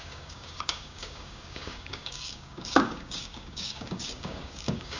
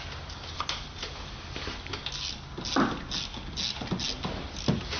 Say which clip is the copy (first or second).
first